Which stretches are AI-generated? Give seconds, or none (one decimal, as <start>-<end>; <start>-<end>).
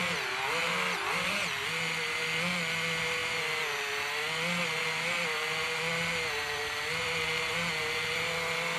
none